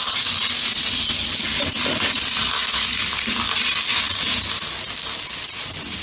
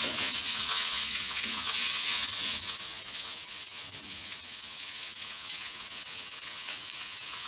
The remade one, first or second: second